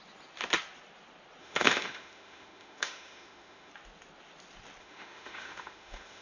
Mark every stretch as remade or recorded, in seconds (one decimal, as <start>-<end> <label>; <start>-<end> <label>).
0.0-1.4 recorded; 1.4-3.7 remade; 3.7-4.8 recorded; 4.8-6.2 remade